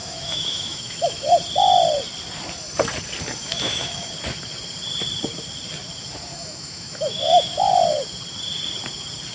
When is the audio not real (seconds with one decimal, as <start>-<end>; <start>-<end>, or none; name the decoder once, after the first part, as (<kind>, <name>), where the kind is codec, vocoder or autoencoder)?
0.0-1.3 (autoencoder, DAC-VAE); 3.4-4.1; 6.3-7.7